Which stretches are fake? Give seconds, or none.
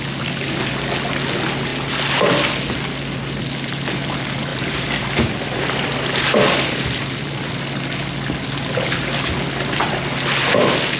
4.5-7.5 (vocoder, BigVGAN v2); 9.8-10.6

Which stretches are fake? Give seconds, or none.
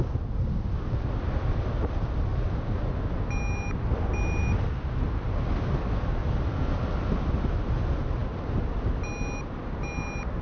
none